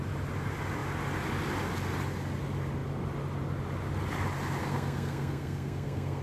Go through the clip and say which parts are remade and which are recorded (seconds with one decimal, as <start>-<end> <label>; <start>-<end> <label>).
0.0-4.6 recorded; 4.6-6.2 remade